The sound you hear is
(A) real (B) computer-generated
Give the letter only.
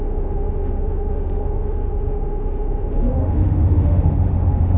B